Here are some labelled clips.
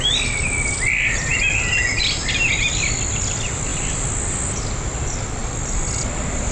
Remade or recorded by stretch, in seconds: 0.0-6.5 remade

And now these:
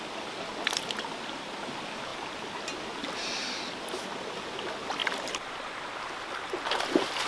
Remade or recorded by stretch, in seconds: 0.0-7.3 recorded

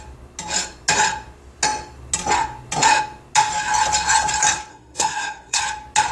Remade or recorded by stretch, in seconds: 0.0-4.7 recorded; 4.7-5.6 remade; 5.6-6.1 recorded

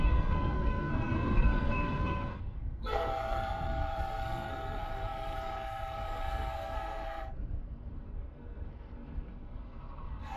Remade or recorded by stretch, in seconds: 0.0-10.4 remade

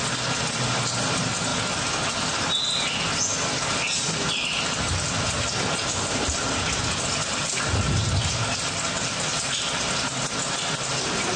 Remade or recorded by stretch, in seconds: 0.0-11.4 recorded

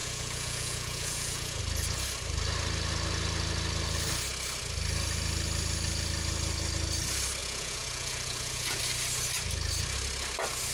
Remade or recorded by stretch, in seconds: 0.0-1.6 remade; 1.6-7.4 recorded; 7.4-8.8 remade; 8.8-10.7 recorded

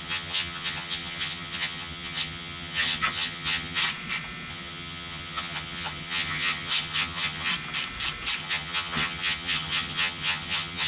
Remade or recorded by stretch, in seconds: 0.0-3.8 remade; 3.8-4.5 recorded; 4.5-7.5 remade; 7.5-8.4 recorded; 8.4-10.9 remade